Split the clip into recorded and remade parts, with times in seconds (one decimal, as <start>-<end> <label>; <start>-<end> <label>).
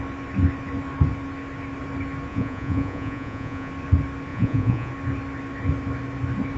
0.0-2.3 recorded; 2.3-3.7 remade; 3.7-4.3 recorded; 4.3-4.9 remade; 4.9-6.6 recorded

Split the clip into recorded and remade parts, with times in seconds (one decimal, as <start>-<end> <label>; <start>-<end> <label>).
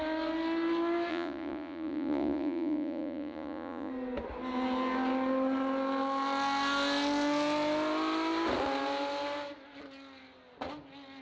0.0-1.1 recorded; 1.1-3.9 remade; 3.9-11.2 recorded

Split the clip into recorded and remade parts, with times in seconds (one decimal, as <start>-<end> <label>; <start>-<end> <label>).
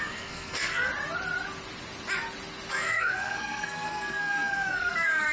0.0-0.9 remade; 0.9-2.7 recorded; 2.7-5.3 remade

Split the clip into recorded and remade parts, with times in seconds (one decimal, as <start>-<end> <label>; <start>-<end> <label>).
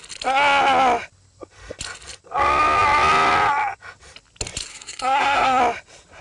0.0-4.7 recorded; 4.7-5.6 remade; 5.6-6.2 recorded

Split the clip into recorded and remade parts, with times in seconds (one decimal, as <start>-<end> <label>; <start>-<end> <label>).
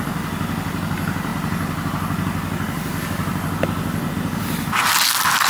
0.0-5.5 recorded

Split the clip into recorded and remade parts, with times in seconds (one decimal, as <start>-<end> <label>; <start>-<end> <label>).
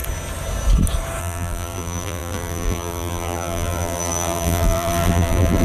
0.0-1.2 recorded; 1.2-5.6 remade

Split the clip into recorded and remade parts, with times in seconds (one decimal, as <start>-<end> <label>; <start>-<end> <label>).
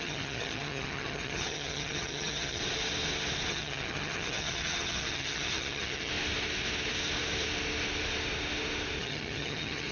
0.0-2.6 remade; 2.6-3.5 recorded; 3.5-6.1 remade; 6.1-9.0 recorded; 9.0-9.9 remade